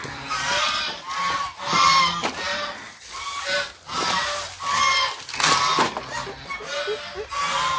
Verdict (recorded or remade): recorded